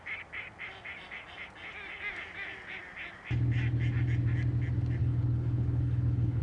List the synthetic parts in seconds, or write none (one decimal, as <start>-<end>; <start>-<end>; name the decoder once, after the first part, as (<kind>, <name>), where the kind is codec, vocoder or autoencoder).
5.0-6.4 (codec, HILCodec)